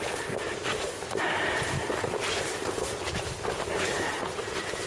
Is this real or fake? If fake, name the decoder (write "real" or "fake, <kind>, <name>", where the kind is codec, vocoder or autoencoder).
real